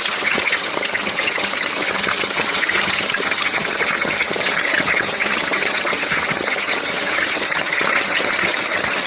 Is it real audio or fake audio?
fake